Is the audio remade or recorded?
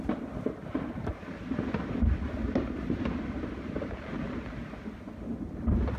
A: recorded